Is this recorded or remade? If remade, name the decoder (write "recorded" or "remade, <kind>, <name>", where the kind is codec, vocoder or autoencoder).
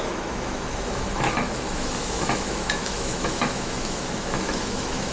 remade, autoencoder, DAC-VAE